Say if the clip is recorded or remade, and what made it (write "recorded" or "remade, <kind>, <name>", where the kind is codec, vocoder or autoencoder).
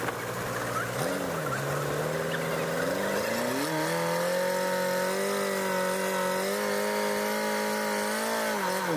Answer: recorded